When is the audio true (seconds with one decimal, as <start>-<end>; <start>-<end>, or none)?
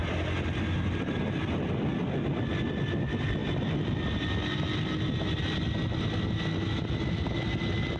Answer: 0.0-8.0